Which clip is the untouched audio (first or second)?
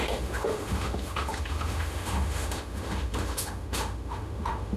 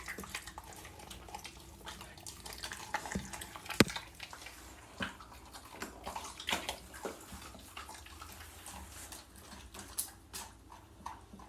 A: second